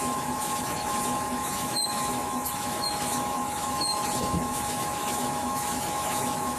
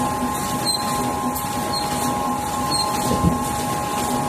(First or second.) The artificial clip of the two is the first